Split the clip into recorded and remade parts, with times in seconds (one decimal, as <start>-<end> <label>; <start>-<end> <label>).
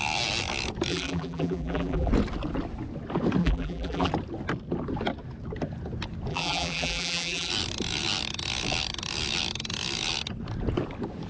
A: 0.0-0.9 recorded; 0.9-2.1 remade; 2.1-3.4 recorded; 3.4-4.1 remade; 4.1-6.3 recorded; 6.3-7.5 remade; 7.5-11.3 recorded